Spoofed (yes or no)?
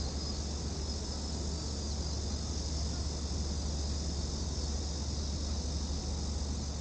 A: no